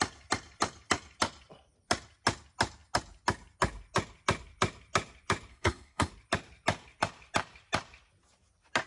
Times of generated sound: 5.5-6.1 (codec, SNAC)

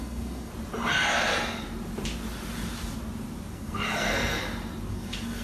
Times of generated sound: 0.0-0.5 (codec, SNAC); 3.5-4.4; 4.9-5.4

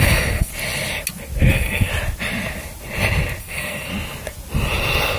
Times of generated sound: 0.0-0.5 (codec, SNAC); 1.5-1.9; 3.4-3.9

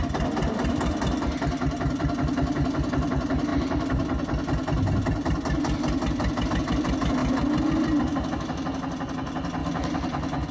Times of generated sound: none

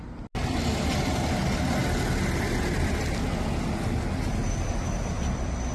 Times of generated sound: none